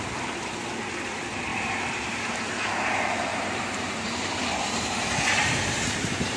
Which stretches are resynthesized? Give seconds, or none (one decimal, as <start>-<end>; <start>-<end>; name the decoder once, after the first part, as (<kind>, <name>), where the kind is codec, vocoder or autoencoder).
1.5-2.9 (vocoder, BigVGAN v2); 3.3-6.4